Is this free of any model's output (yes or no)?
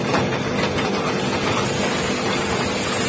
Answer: yes